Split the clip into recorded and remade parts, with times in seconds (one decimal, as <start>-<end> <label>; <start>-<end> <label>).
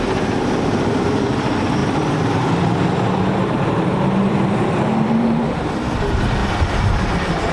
0.0-7.5 remade